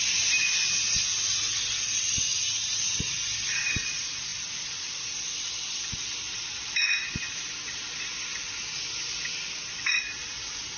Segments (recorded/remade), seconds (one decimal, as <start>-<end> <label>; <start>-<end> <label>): 0.0-4.3 recorded; 4.3-5.9 remade; 5.9-10.8 recorded